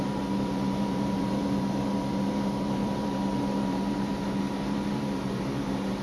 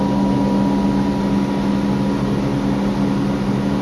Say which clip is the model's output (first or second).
first